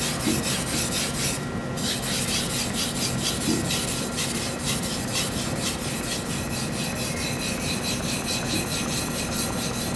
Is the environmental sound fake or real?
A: real